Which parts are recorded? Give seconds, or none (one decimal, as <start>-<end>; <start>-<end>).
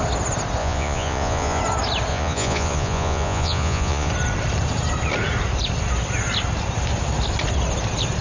0.0-0.6; 1.6-2.1; 4.1-8.2